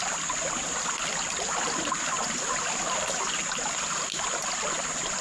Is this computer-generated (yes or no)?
no